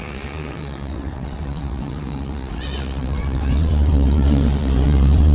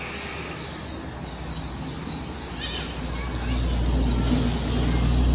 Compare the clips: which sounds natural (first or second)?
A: second